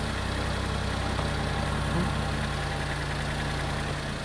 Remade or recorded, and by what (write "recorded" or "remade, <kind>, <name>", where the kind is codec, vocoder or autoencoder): recorded